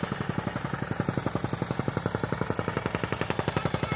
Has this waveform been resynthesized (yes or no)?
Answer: no